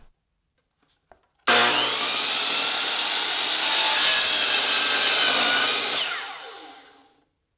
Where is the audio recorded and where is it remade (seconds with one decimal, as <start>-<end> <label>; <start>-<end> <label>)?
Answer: 0.0-7.6 recorded